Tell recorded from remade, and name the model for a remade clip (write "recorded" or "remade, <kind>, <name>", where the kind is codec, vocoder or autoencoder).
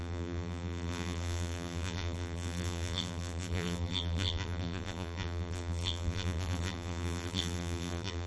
remade, vocoder, BigVGAN v2